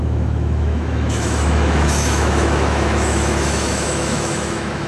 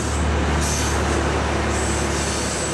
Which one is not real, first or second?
first